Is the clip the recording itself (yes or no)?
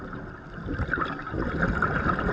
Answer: yes